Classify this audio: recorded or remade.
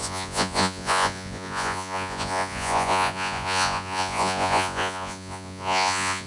remade